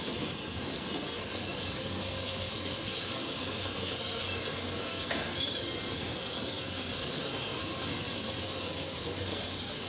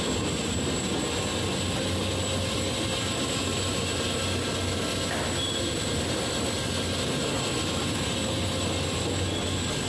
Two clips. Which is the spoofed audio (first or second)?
first